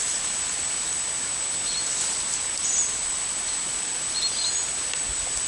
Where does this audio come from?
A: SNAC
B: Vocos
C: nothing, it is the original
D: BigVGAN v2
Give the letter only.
C